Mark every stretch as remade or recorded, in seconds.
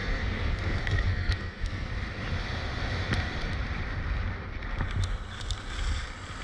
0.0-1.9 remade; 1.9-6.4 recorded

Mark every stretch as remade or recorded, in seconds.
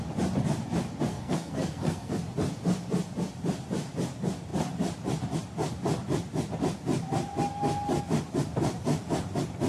0.0-1.1 recorded; 1.1-2.2 remade; 2.2-9.7 recorded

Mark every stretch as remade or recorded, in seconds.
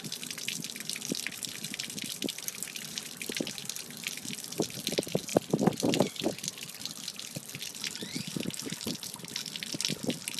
0.0-10.4 recorded